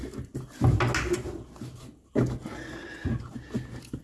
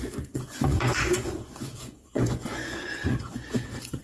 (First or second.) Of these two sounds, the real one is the first